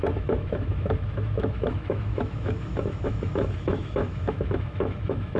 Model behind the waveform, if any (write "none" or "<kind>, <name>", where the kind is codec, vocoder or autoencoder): autoencoder, DAC-VAE